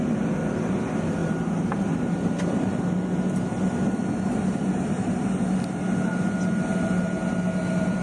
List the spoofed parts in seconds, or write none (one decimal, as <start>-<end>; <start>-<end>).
none

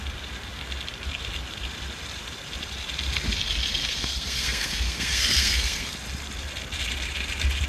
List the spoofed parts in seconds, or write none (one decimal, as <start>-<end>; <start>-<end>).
3.8-5.9

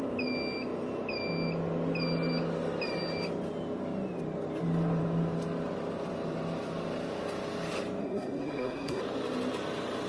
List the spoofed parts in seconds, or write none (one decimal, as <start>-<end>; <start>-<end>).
8.0-9.0